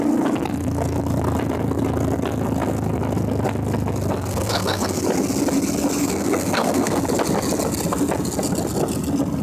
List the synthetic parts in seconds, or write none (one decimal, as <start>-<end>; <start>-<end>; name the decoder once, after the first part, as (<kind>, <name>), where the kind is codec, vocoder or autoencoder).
4.3-5.0 (codec, SNAC); 6.0-7.0